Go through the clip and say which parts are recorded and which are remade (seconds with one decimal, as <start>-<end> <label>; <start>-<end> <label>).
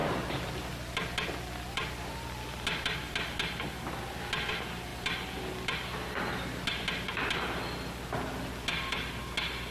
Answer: 0.0-9.7 recorded